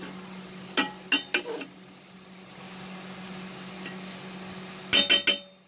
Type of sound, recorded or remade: recorded